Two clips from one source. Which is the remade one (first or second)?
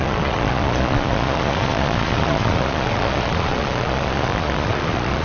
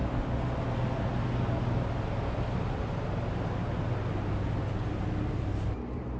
first